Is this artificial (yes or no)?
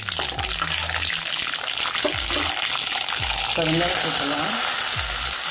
no